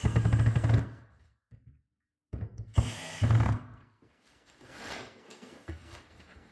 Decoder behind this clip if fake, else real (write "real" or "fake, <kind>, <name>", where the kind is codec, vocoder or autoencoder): fake, codec, SNAC